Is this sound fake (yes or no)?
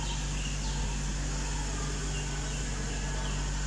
no